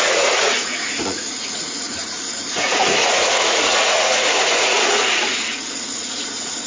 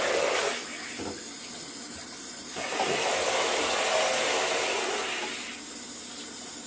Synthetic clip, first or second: first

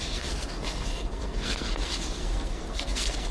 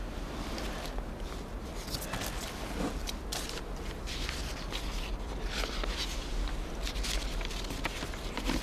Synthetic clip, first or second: first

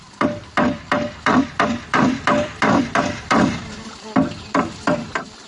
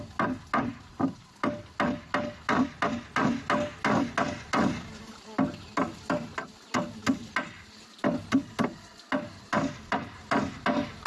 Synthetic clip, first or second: first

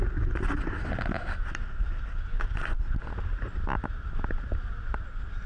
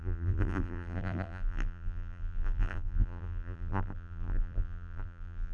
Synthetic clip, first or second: second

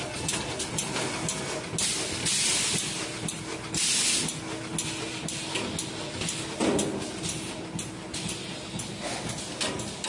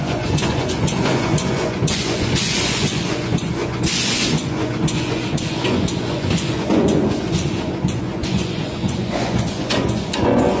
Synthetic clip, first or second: second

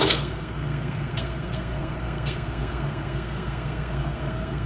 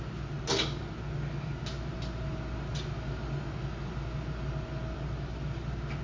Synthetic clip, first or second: first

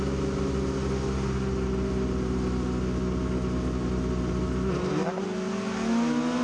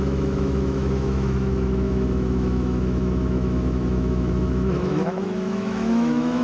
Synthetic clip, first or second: second